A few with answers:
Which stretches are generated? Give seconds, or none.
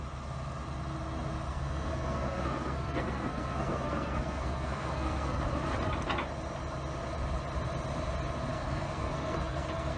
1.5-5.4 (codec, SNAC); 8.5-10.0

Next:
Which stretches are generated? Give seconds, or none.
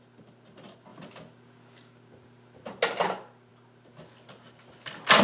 none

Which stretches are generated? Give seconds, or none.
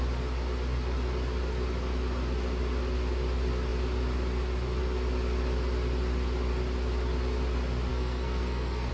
7.9-8.9 (codec, SNAC)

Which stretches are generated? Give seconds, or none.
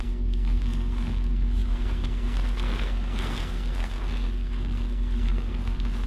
0.0-6.1 (codec, SNAC)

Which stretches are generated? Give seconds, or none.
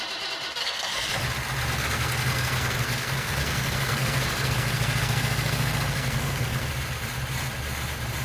0.6-1.2 (codec, SNAC); 1.8-6.7